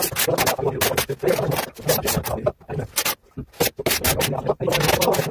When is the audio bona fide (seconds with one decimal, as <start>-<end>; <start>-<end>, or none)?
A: 0.0-5.3